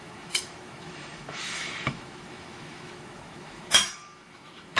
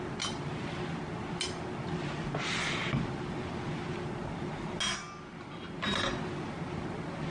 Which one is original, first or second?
second